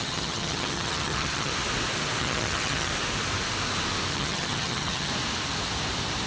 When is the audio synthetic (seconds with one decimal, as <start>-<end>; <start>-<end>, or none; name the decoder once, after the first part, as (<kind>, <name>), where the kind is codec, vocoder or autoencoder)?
0.0-1.5 (vocoder, HiFi-GAN); 2.2-2.9; 4.1-5.1